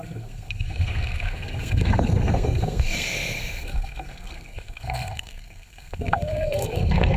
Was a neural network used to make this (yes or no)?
yes